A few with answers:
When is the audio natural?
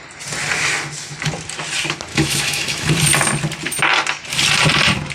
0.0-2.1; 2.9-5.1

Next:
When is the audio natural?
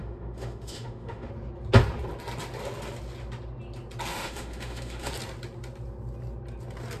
1.3-4.1; 5.1-7.0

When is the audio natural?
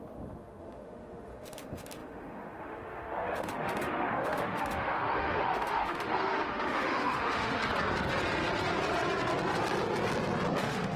7.6-10.6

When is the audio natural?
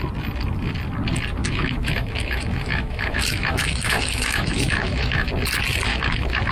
0.0-1.4; 5.3-5.9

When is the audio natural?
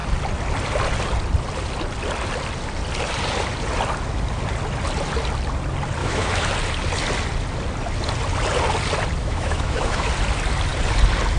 0.0-6.0; 6.5-9.2; 10.1-11.4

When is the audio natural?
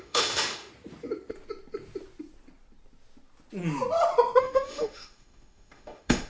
0.7-4.4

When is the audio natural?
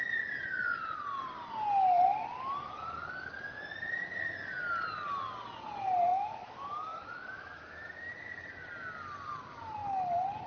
0.0-6.1; 8.1-10.5